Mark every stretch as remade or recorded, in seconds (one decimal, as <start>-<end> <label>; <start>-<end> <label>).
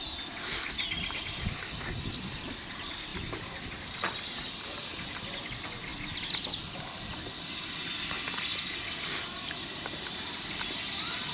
0.0-3.1 recorded; 3.1-3.6 remade; 3.6-11.3 recorded